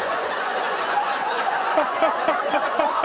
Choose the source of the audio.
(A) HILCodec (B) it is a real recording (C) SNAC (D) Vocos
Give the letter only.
D